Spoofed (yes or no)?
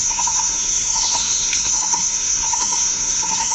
yes